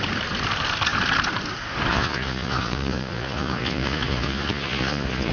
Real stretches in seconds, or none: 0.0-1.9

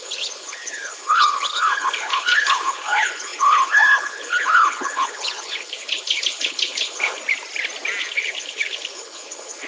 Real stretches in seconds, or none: 7.2-8.0

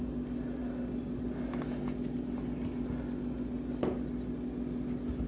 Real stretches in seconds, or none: 0.0-5.3

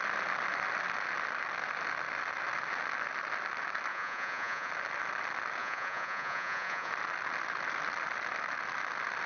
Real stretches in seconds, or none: 0.0-3.9; 4.7-5.6; 6.9-9.3

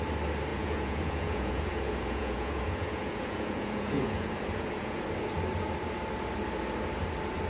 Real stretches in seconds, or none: 0.0-0.5; 5.0-7.5

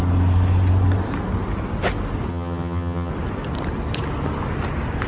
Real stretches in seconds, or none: 0.0-2.3; 3.1-5.1